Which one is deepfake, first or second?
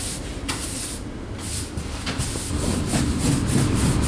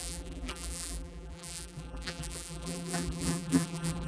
second